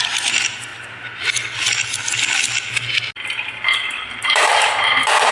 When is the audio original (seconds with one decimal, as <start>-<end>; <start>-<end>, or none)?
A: 0.7-3.9

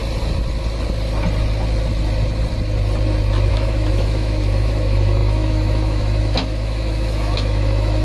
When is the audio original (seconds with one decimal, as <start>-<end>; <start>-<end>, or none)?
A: 0.0-3.5

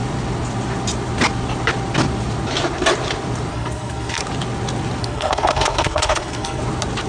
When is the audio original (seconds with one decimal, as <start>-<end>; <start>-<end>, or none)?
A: 0.0-3.5; 4.2-5.0; 6.6-7.1

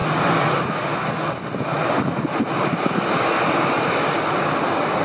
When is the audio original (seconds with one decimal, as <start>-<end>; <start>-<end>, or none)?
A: 0.0-5.0

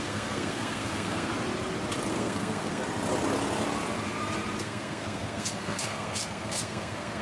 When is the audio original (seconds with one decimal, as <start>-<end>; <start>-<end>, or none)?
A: 1.3-2.1; 2.8-4.6

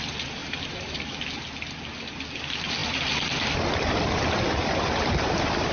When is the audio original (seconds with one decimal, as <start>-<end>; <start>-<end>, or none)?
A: 0.0-0.4; 1.4-5.7

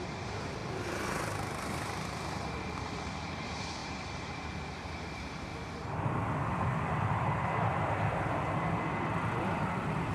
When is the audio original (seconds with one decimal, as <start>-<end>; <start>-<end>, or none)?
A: 5.5-6.2